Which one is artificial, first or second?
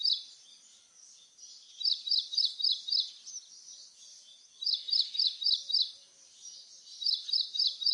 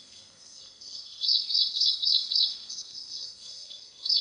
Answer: second